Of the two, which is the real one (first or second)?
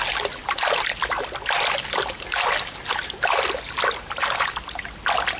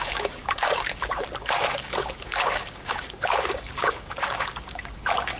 first